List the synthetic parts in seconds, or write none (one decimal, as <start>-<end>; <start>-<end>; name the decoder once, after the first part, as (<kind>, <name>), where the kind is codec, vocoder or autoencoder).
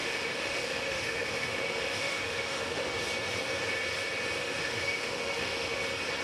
0.0-2.9 (autoencoder, DAC-VAE); 4.4-5.8